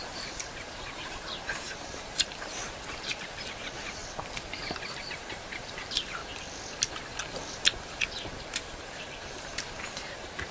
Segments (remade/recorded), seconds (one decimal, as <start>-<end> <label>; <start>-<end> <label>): 0.0-2.6 remade; 2.6-3.1 recorded; 3.1-4.0 remade; 4.0-5.0 recorded; 5.0-6.2 remade; 6.2-8.8 recorded; 8.8-10.5 remade